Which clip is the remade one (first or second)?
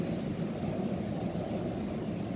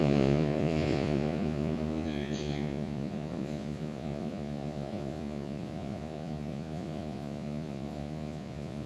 second